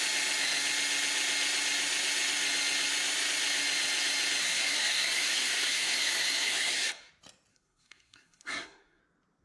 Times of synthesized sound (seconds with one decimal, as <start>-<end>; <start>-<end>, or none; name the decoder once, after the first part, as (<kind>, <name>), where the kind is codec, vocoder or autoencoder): 4.4-7.1 (codec, SNAC); 7.5-9.0